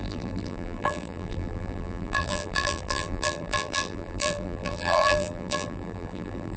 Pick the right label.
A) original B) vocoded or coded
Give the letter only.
B